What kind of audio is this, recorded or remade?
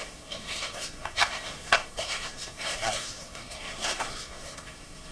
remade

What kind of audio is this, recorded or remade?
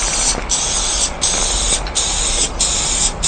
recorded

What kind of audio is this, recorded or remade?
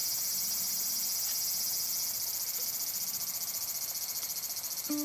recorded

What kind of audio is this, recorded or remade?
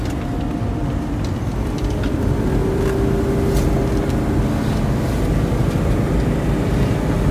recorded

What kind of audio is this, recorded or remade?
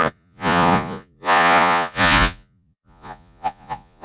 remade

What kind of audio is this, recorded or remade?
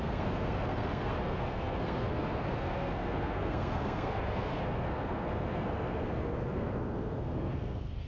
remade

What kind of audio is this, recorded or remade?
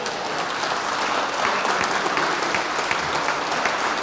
recorded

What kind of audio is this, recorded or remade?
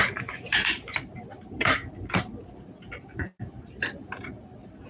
remade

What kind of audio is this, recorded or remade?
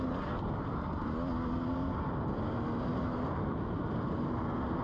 recorded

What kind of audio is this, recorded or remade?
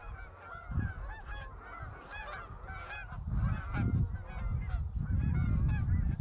recorded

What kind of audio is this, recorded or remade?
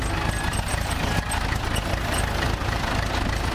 recorded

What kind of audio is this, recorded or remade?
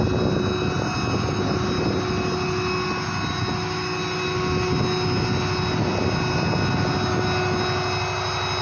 recorded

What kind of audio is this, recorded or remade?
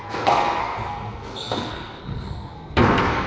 remade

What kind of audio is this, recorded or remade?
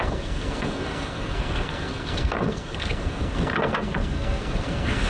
remade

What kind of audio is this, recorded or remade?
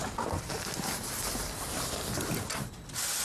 recorded